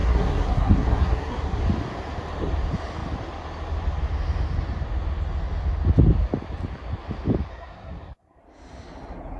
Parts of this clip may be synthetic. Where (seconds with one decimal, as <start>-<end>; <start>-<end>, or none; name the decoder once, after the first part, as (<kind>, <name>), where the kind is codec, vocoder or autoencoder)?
0.0-1.6 (codec, SNAC); 7.5-8.4